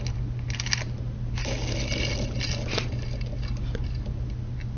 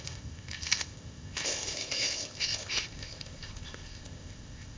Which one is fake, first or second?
second